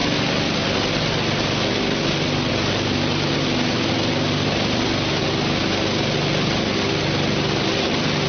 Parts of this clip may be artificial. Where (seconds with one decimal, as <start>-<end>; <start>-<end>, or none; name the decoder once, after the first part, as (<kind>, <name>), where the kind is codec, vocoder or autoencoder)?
none